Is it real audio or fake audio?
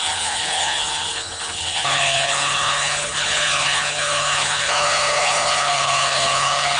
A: fake